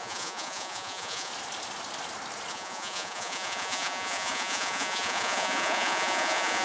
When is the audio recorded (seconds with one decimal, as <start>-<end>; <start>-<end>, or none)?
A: 1.3-2.5